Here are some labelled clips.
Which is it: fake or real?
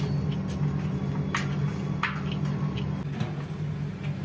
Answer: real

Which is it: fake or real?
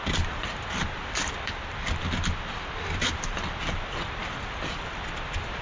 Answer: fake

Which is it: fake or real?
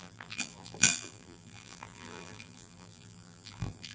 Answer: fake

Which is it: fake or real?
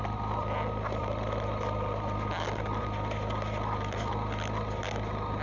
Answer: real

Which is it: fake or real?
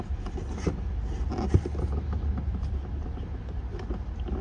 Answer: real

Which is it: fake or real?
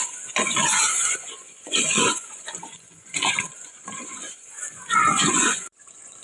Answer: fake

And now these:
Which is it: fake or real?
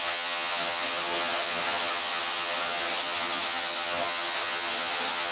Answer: fake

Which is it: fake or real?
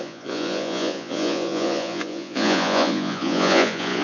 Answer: fake